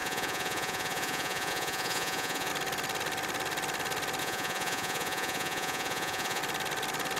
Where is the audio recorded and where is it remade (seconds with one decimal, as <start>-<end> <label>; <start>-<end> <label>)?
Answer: 0.0-2.5 remade; 2.5-4.2 recorded; 4.2-6.4 remade; 6.4-7.2 recorded